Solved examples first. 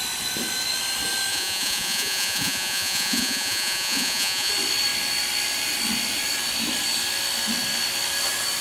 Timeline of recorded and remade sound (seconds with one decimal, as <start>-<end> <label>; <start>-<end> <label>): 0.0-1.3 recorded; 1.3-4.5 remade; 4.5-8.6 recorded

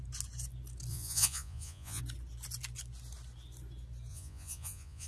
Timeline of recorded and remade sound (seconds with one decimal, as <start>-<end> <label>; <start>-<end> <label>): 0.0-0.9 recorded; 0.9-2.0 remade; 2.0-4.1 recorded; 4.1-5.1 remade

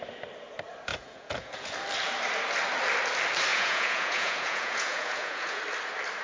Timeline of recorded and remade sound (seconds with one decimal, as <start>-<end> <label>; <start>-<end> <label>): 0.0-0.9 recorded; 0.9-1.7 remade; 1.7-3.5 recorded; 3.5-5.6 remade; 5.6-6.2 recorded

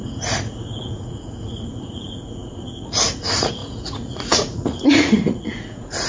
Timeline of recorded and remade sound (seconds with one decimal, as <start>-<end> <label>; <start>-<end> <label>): 0.0-6.1 remade

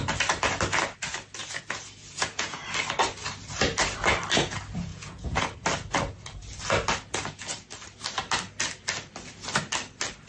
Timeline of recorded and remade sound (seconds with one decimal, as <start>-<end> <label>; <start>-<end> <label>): 0.0-1.4 recorded; 1.4-2.6 remade; 2.6-4.9 recorded; 4.9-5.4 remade; 5.4-10.3 recorded

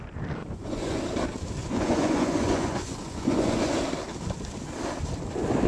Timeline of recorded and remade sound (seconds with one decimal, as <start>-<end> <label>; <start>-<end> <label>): 0.0-0.4 recorded; 0.4-1.0 remade; 1.0-1.6 recorded; 1.6-3.7 remade; 3.7-5.7 recorded